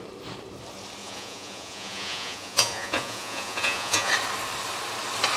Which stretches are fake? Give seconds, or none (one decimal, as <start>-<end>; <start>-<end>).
1.0-4.1